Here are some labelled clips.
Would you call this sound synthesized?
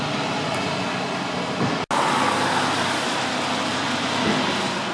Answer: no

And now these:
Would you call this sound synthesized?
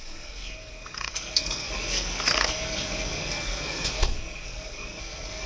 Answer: yes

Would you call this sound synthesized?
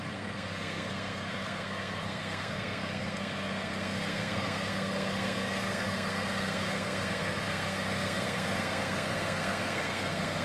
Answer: yes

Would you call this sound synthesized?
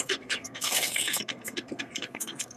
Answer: yes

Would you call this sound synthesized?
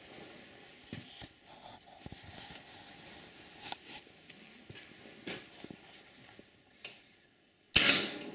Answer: no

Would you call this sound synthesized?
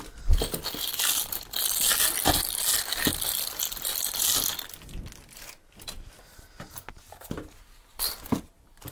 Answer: no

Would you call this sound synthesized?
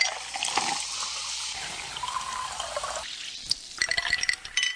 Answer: no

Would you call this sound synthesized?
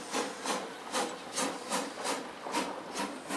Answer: no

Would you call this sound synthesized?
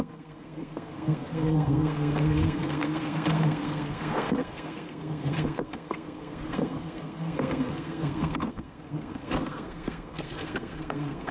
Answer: yes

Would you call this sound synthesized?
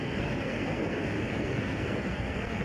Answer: yes